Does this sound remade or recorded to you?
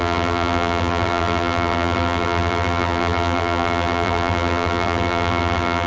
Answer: remade